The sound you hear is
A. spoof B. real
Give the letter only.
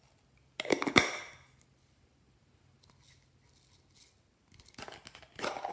B